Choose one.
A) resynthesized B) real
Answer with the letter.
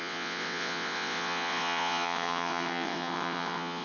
A